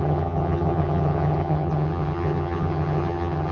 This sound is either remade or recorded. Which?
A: remade